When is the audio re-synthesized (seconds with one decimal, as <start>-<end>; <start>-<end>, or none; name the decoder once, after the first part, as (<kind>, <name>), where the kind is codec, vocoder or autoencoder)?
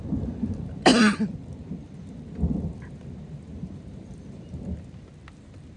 3.5-4.6 (vocoder, BigVGAN v2)